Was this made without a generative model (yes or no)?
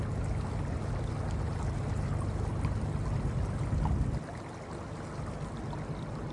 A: yes